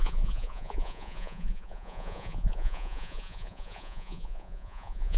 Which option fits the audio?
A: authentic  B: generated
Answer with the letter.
B